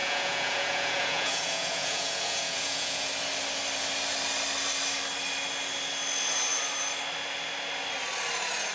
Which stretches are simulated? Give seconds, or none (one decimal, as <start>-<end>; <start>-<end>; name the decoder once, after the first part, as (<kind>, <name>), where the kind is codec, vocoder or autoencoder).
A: 0.0-3.1 (vocoder, Vocos)